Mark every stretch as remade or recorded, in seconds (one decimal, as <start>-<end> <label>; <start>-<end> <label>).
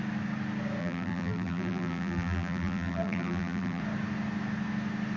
0.0-0.8 recorded; 0.8-3.8 remade; 3.8-5.2 recorded